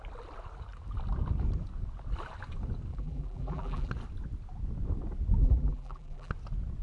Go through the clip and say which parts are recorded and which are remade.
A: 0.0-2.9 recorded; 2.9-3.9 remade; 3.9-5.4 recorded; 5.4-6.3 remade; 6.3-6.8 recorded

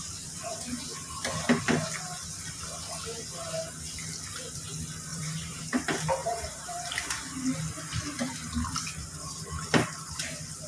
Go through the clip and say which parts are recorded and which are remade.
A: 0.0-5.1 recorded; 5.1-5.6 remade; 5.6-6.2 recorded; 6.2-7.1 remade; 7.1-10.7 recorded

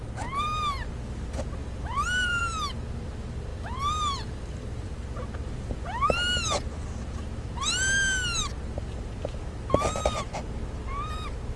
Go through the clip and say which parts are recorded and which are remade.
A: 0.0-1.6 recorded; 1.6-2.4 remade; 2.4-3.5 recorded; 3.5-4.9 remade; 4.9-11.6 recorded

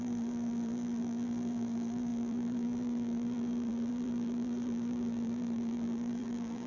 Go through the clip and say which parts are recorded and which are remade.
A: 0.0-6.7 remade